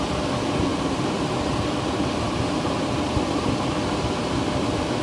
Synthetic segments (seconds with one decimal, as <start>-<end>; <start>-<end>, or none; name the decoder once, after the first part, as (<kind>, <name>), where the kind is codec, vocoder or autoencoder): 0.7-1.7 (vocoder, BigVGAN v2)